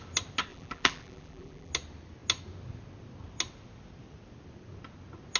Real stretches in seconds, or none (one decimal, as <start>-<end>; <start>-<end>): 0.0-0.5; 1.7-5.4